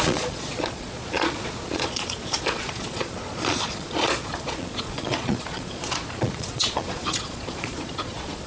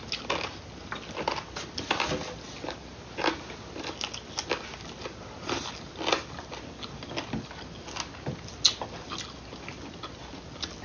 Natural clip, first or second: second